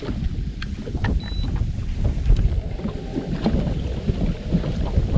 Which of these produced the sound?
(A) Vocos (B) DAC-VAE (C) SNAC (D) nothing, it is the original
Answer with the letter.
D